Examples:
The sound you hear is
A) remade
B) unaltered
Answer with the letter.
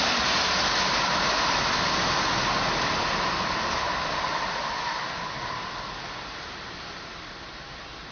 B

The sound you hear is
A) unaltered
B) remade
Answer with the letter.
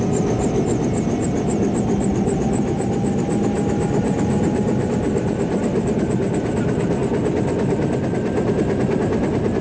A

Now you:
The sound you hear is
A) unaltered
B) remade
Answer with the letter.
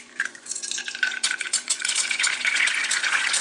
B